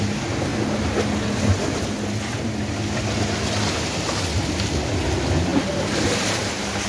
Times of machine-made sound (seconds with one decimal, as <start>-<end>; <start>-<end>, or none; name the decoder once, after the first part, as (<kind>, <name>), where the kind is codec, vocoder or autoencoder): 5.5-6.9 (vocoder, BigVGAN v2)